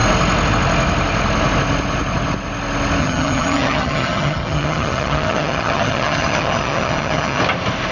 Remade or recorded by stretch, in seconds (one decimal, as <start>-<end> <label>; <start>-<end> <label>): 0.0-3.0 recorded; 3.0-7.4 remade; 7.4-7.9 recorded